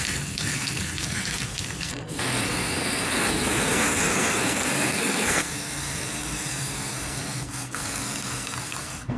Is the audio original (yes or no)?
no